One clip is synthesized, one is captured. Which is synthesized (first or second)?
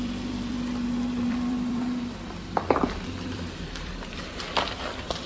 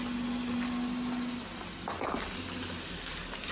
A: first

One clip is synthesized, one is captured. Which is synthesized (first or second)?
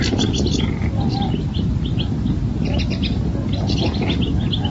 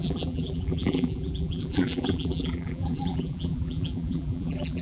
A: second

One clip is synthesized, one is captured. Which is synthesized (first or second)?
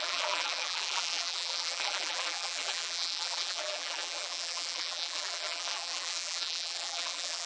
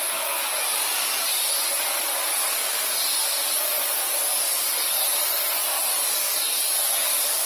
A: first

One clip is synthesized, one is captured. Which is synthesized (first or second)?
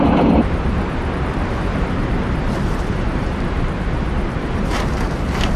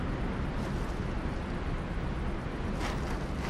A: first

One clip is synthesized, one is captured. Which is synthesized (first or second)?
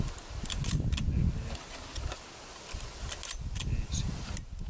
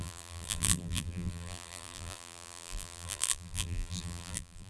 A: second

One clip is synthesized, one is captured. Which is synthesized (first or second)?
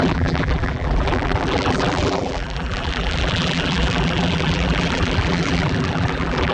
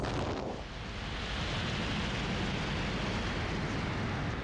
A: first